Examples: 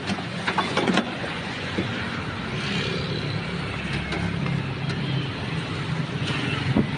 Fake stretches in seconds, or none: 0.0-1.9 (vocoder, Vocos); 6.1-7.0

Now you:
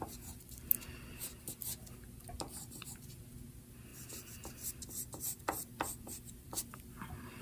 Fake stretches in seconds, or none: 3.9-7.4 (vocoder, BigVGAN v2)

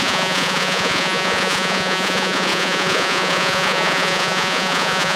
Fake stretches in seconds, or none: 0.0-5.2 (vocoder, Vocos)

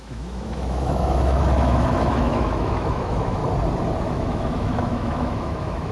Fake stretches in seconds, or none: 0.0-3.4 (autoencoder, DAC-VAE); 4.0-5.9

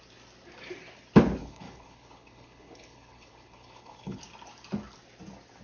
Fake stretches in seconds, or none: 1.4-4.2 (codec, HILCodec)